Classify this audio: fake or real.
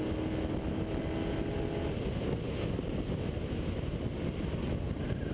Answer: real